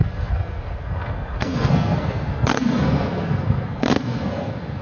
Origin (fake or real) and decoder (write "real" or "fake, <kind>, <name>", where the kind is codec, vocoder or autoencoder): fake, codec, SNAC